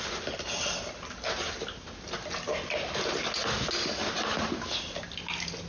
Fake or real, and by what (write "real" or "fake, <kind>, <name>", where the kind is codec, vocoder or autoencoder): real